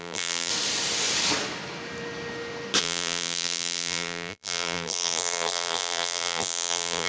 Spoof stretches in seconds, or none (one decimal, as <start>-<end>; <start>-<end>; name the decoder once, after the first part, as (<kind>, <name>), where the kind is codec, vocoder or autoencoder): 0.0-0.5 (vocoder, BigVGAN v2); 2.8-7.1